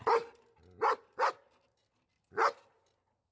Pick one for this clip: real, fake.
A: real